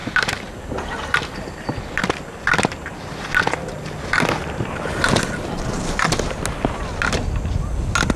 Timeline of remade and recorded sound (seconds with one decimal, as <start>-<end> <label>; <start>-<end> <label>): 0.0-8.2 recorded